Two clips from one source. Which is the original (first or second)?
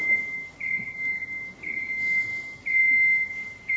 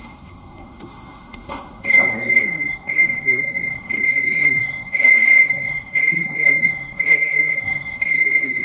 first